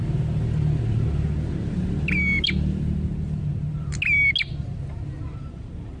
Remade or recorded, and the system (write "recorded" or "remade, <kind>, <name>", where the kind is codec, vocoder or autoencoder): recorded